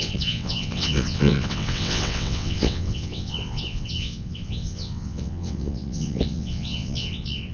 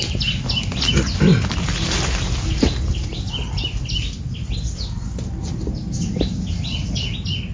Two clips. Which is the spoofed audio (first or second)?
first